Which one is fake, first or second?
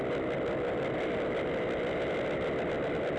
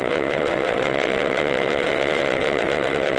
second